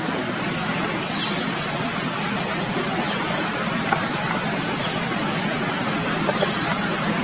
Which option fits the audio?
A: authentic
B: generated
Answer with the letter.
A